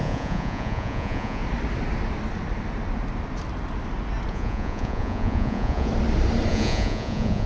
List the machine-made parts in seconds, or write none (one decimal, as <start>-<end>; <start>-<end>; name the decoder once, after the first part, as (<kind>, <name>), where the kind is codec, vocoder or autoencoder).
0.0-1.4 (vocoder, Vocos); 4.3-5.9; 6.5-7.5